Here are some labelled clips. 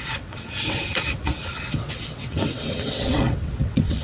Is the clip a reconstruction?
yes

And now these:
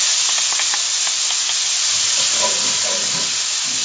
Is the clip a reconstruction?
no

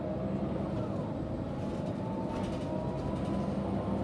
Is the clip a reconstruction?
no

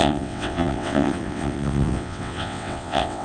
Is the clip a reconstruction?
yes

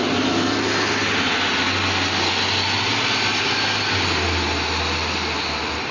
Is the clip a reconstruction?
no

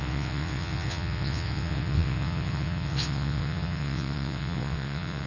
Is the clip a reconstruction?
yes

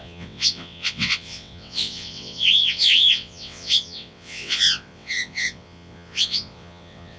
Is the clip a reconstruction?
yes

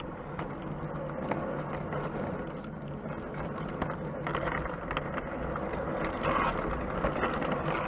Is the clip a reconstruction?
no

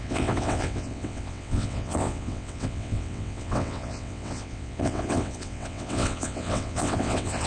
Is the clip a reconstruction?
yes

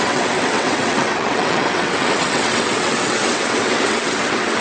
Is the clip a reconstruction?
yes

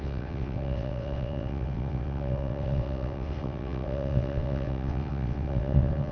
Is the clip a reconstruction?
yes